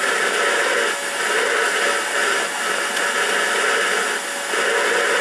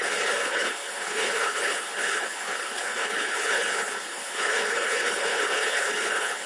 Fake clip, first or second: second